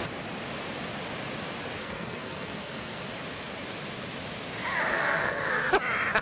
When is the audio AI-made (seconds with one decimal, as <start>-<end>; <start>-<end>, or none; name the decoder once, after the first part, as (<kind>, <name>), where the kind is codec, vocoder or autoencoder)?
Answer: 1.8-3.0 (codec, SNAC); 4.9-5.7